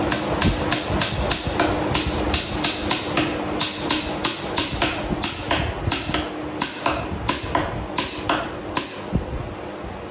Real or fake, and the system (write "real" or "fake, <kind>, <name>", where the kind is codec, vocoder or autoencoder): real